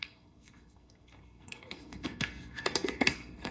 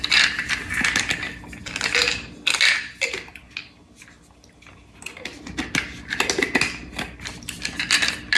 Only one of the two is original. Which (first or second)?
second